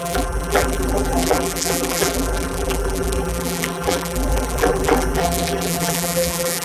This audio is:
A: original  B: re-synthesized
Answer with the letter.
B